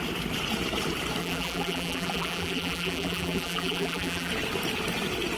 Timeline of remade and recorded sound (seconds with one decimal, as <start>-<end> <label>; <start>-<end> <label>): 0.0-1.2 recorded; 1.2-4.3 remade; 4.3-5.4 recorded